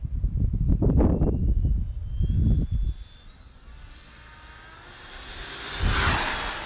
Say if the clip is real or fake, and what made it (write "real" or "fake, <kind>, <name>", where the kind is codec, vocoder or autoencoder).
real